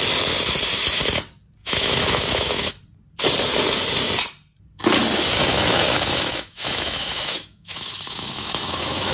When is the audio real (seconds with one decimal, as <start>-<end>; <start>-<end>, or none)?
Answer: 0.0-1.6; 2.7-5.4